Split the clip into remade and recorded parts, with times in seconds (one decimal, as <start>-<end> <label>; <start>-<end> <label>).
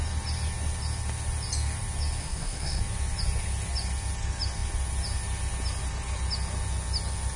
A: 0.0-2.2 recorded; 2.2-2.8 remade; 2.8-7.4 recorded